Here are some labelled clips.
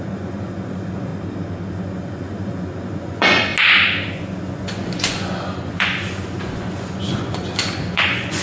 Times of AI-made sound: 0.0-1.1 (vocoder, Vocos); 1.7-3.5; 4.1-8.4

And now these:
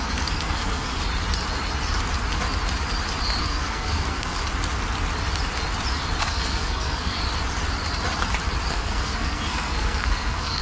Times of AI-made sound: 0.0-0.9 (codec, SNAC); 3.4-4.4; 6.2-7.2; 8.7-10.6

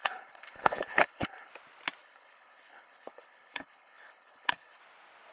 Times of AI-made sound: 0.0-1.5 (codec, HILCodec); 2.0-4.8

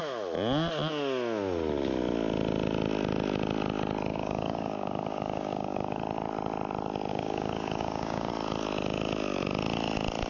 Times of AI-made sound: 4.1-6.0 (codec, DAC); 7.1-8.3

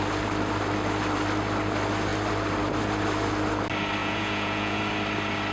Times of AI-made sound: 4.0-4.8 (vocoder, Vocos)

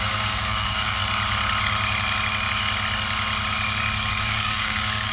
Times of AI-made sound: 0.0-1.0 (codec, DAC); 4.1-5.1